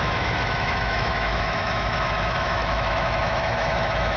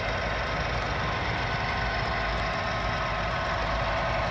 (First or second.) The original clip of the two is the second